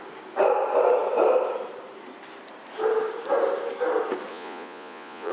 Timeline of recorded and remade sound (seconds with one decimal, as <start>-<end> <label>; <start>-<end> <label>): 0.0-4.3 recorded; 4.3-5.3 remade